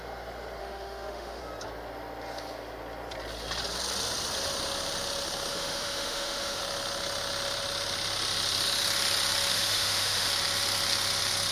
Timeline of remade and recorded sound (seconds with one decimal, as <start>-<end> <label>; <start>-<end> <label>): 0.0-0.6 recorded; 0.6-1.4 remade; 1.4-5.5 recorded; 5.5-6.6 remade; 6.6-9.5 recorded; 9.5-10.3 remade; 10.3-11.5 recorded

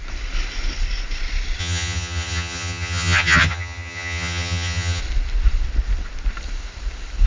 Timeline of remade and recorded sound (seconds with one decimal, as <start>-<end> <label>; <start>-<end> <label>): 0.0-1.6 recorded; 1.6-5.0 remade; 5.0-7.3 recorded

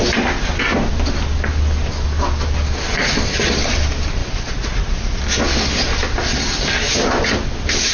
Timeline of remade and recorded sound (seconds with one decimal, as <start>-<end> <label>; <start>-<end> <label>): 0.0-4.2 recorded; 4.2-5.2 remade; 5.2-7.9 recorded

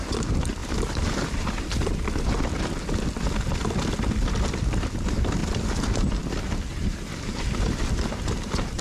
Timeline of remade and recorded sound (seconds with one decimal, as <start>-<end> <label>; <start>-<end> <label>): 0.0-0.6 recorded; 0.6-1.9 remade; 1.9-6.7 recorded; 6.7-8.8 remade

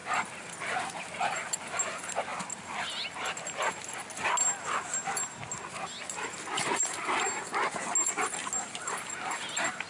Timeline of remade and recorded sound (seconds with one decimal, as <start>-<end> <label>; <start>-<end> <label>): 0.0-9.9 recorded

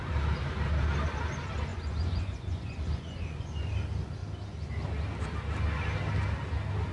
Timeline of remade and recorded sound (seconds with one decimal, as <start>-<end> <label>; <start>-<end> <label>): 0.0-1.7 recorded; 1.7-3.7 remade; 3.7-6.9 recorded

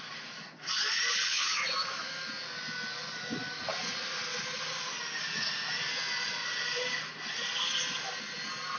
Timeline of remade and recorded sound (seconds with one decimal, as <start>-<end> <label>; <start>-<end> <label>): 0.0-1.3 recorded; 1.3-2.3 remade; 2.3-8.8 recorded

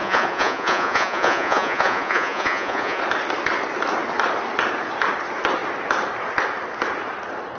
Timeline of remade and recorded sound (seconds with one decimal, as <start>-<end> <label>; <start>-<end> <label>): 0.0-3.0 remade; 3.0-7.6 recorded